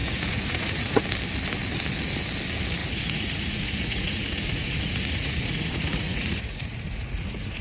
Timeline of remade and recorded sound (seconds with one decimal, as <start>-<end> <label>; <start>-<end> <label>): 0.0-1.0 remade; 1.0-2.8 recorded; 2.8-7.6 remade